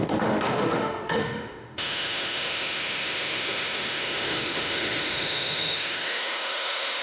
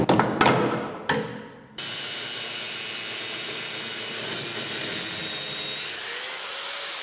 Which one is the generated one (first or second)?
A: first